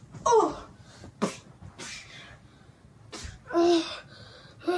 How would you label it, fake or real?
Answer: real